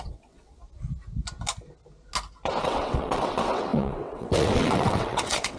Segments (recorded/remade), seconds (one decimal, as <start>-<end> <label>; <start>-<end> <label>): 0.0-0.6 remade; 0.6-2.6 recorded; 2.6-5.6 remade